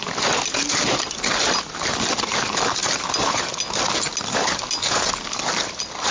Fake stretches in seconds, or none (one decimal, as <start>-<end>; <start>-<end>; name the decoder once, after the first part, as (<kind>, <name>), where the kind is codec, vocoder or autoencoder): none

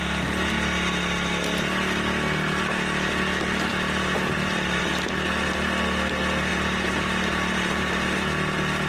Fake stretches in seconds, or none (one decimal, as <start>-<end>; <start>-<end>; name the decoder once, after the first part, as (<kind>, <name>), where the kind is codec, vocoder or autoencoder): 3.7-4.8 (vocoder, BigVGAN v2); 6.5-8.2

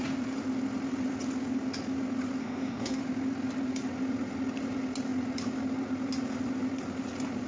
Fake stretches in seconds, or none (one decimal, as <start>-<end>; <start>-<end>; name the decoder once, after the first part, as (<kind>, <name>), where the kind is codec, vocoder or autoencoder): 2.4-3.0 (codec, DAC)

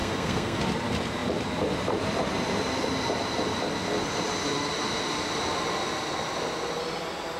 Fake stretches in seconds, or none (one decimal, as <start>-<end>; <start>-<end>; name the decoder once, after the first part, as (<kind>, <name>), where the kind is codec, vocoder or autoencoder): 0.0-0.6 (codec, SNAC)

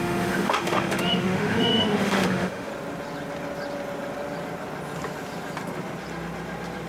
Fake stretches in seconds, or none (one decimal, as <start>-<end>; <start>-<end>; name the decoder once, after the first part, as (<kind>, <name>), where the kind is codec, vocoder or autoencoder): 0.0-2.7 (autoencoder, DAC-VAE)

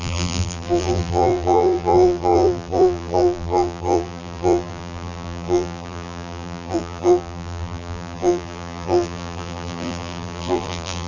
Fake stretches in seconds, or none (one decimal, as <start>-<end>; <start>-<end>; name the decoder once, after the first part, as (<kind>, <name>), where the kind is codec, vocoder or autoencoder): 0.0-11.1 (vocoder, BigVGAN v2)

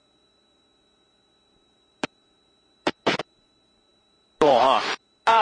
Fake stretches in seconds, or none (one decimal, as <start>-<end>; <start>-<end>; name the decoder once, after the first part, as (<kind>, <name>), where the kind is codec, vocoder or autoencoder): 0.0-5.4 (vocoder, BigVGAN v2)